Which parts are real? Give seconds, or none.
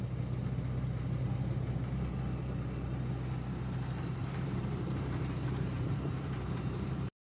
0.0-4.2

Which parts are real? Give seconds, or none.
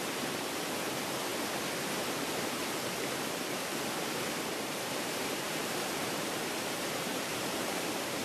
1.3-2.1; 2.6-4.4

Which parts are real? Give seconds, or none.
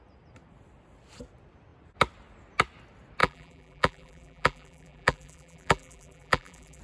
0.0-3.2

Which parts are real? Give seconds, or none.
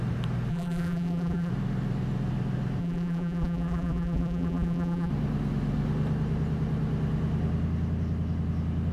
0.0-0.5; 1.5-2.8; 5.1-8.9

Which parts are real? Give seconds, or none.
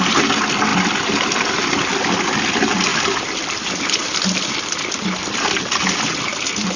0.0-0.7; 2.1-2.9; 4.9-6.8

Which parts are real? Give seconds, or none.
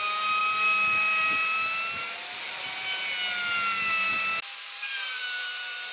0.4-3.9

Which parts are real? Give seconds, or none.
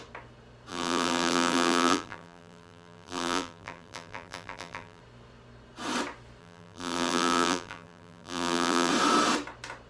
0.0-0.7; 5.0-6.4; 8.9-9.9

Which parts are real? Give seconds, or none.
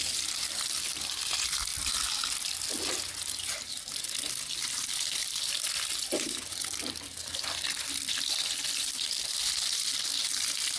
1.7-4.3